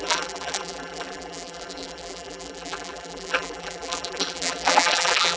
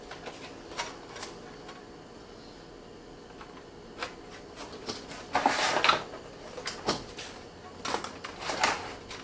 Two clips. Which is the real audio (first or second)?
second